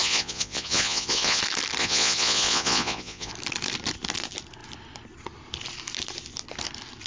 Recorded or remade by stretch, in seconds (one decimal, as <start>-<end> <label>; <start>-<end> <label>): 0.0-1.4 remade; 1.4-1.8 recorded; 1.8-3.3 remade; 3.3-7.1 recorded